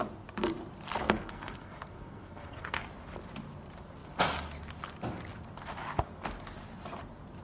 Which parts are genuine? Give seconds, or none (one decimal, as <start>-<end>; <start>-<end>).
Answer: 0.0-1.0; 2.8-7.4